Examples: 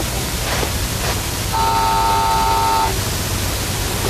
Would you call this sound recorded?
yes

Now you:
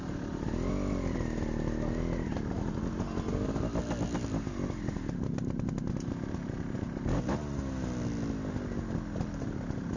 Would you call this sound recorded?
yes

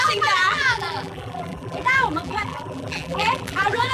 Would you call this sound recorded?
no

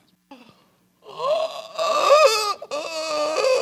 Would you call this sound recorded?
yes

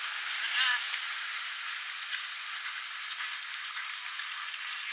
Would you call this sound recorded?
no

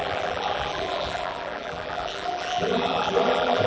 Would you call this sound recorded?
no